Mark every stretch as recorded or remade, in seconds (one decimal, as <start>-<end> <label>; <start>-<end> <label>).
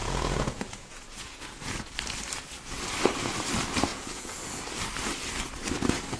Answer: 0.0-1.9 remade; 1.9-3.9 recorded; 3.9-4.5 remade; 4.5-6.2 recorded